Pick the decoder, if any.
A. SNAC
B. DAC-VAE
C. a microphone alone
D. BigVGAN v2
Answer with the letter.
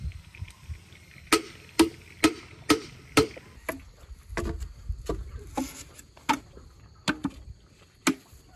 C